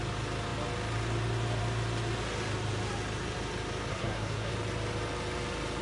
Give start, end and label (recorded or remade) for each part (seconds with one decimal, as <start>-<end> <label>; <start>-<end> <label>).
0.0-3.9 recorded; 3.9-4.5 remade; 4.5-5.8 recorded